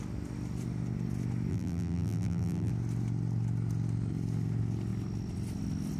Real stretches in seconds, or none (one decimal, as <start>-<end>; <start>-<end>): 0.0-1.5; 2.7-6.0